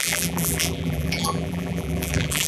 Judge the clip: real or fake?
fake